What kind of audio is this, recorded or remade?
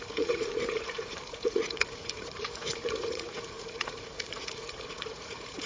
remade